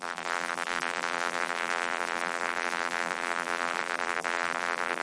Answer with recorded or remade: remade